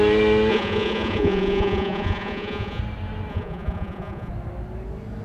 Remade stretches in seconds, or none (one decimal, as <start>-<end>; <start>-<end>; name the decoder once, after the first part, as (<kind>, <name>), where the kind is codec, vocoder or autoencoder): 0.5-2.8 (vocoder, Vocos); 3.3-4.3